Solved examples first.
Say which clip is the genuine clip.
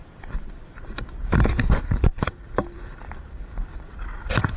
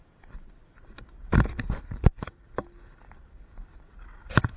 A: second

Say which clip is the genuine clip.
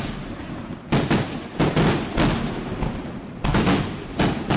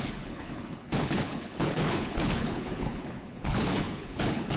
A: first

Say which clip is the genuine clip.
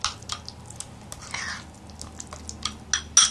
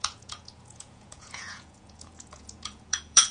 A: first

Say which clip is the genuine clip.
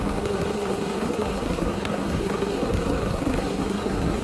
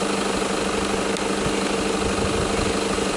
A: second